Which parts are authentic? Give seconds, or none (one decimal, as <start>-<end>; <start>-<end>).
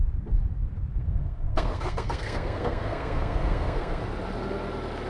0.0-0.9; 4.0-5.1